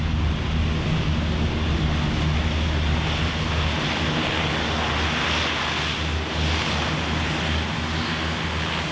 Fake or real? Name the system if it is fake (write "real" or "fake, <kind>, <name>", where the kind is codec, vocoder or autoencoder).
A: real